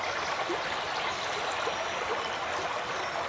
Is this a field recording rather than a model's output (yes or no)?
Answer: yes